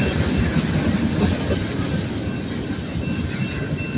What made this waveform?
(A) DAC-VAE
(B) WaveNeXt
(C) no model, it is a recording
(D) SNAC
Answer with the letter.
C